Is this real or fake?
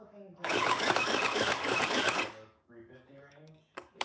fake